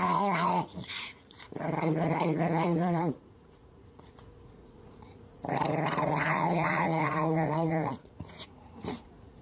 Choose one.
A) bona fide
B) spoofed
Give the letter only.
B